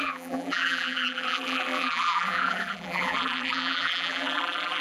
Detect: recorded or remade remade